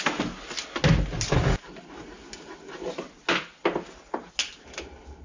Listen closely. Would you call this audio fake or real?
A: real